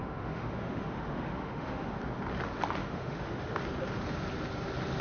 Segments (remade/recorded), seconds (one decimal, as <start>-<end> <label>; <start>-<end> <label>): 0.0-2.0 remade; 2.0-2.8 recorded; 2.8-3.6 remade; 3.6-5.0 recorded